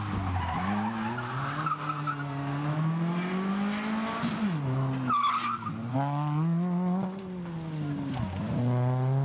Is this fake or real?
real